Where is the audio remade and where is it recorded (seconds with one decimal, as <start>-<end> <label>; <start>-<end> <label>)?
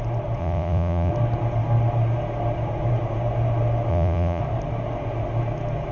0.0-0.4 recorded; 0.4-1.1 remade; 1.1-3.9 recorded; 3.9-4.4 remade; 4.4-5.9 recorded